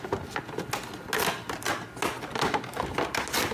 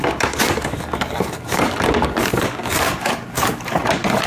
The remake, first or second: second